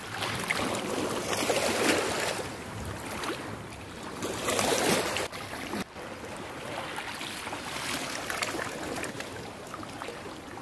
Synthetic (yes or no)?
no